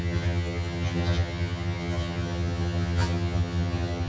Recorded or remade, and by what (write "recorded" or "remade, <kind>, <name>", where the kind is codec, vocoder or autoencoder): remade, vocoder, HiFi-GAN